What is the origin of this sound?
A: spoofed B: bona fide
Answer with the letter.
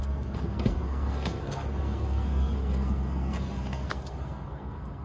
A